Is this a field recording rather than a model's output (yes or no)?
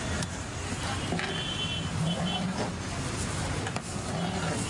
yes